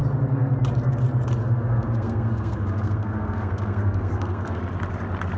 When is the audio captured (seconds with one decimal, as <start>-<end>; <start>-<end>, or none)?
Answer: 0.0-1.4; 4.6-5.4